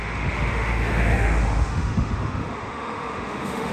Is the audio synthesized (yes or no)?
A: yes